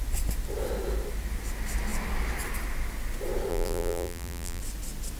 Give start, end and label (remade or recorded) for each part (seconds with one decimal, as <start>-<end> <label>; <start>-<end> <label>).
0.0-3.5 recorded; 3.5-4.6 remade; 4.6-5.2 recorded